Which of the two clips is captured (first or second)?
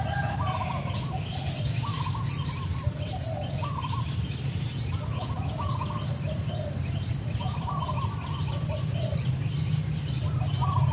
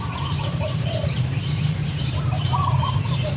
first